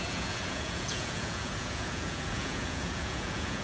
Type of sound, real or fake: fake